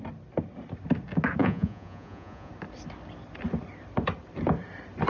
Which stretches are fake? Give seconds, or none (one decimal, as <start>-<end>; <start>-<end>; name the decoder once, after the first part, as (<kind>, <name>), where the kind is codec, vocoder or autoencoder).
1.4-2.5 (vocoder, Vocos)